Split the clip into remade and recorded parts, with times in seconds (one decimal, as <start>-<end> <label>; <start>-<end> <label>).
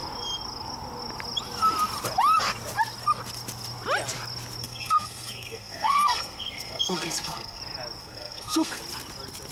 0.0-4.6 recorded; 4.6-7.6 remade; 7.6-8.0 recorded; 8.0-8.8 remade; 8.8-9.5 recorded